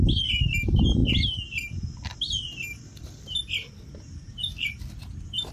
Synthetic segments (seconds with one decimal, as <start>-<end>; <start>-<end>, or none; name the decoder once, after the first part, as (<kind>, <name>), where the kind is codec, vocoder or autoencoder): none